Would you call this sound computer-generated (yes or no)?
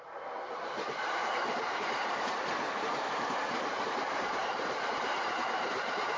yes